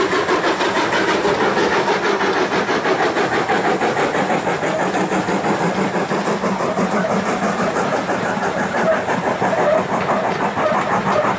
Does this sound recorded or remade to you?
recorded